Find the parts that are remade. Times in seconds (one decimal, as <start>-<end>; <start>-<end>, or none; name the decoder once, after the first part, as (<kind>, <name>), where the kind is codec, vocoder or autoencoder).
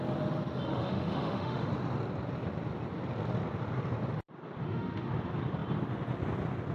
0.7-1.7 (autoencoder, DAC-VAE); 4.6-5.1